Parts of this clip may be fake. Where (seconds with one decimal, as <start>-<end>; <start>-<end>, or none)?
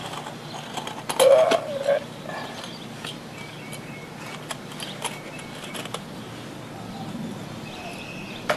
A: none